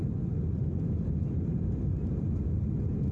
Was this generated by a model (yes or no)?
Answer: no